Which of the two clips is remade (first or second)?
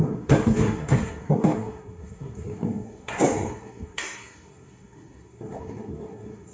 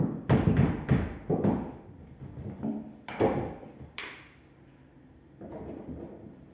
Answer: first